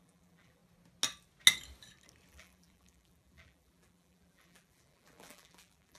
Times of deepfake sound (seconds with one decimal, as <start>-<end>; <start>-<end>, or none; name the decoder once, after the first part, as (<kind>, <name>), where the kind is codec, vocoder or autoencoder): 0.0-0.6 (vocoder, BigVGAN v2); 2.3-6.0